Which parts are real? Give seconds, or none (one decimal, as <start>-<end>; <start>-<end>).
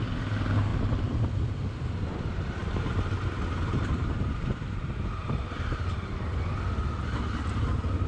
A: 0.0-2.6; 5.9-8.1